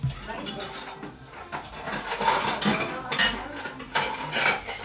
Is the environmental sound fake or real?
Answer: real